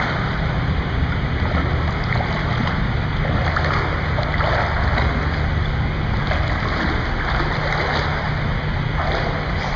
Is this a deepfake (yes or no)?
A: no